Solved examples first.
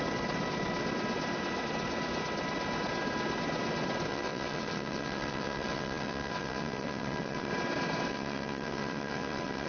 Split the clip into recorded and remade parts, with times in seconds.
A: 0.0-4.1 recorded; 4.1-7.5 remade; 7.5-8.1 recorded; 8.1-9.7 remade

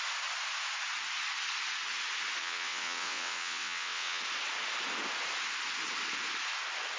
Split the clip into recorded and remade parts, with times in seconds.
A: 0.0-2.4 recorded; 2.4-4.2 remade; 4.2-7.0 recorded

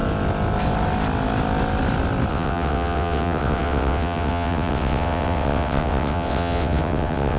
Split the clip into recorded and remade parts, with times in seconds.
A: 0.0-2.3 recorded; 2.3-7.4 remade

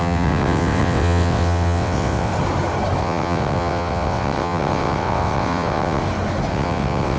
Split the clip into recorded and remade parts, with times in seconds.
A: 0.0-2.3 remade; 2.3-3.0 recorded; 3.0-6.0 remade; 6.0-6.5 recorded; 6.5-7.2 remade